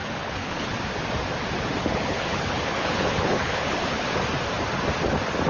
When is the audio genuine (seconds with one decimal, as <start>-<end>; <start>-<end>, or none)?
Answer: 0.8-1.8; 4.2-5.5